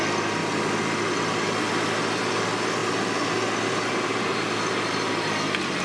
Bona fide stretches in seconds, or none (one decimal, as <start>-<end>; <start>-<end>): 0.0-5.8